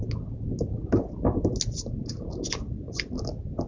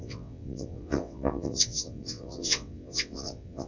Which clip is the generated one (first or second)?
second